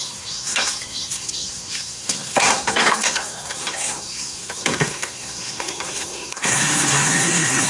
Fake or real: fake